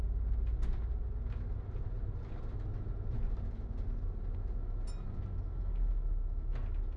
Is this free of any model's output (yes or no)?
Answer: yes